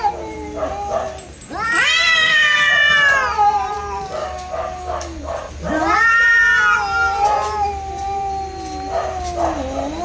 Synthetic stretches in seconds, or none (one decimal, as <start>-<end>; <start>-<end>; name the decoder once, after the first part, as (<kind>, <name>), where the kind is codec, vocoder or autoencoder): 2.1-2.7 (codec, DAC); 4.2-5.5

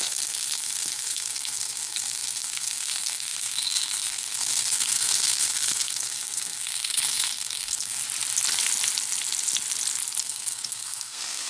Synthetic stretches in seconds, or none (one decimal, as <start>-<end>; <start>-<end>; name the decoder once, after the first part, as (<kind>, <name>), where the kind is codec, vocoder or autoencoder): 0.0-8.0 (codec, SNAC); 10.2-11.5

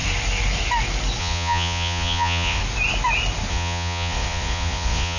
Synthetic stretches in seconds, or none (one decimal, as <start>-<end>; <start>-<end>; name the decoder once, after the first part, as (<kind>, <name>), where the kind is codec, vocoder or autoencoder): 1.2-2.6 (vocoder, Vocos); 3.5-5.2

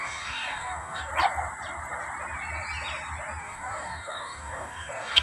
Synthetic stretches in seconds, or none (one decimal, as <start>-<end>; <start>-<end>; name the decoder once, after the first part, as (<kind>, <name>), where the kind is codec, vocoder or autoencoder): 0.0-1.1 (codec, DAC); 3.4-5.2

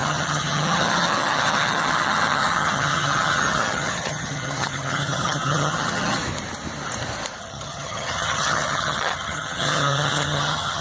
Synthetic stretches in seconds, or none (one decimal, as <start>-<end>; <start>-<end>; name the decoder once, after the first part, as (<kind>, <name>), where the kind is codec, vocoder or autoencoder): 0.0-6.2 (vocoder, HiFi-GAN); 7.4-10.8